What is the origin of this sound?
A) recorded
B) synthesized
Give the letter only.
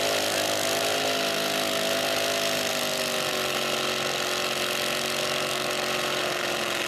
A